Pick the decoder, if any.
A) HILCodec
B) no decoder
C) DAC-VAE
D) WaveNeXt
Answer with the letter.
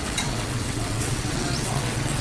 D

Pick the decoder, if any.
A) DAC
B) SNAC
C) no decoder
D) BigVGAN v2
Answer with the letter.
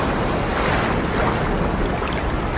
C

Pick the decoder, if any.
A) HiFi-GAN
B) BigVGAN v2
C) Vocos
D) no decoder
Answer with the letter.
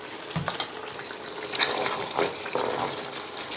D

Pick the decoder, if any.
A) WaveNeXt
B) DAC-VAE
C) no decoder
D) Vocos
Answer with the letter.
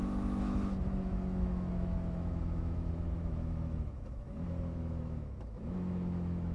B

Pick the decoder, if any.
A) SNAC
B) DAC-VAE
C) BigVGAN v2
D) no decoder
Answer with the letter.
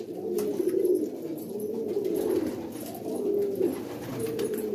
D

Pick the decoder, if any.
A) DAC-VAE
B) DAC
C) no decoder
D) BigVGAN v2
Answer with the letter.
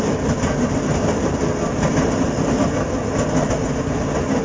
C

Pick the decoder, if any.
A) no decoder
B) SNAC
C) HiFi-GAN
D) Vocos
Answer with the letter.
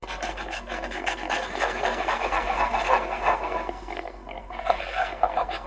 B